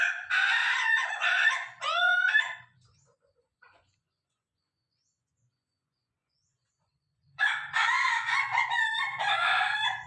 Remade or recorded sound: remade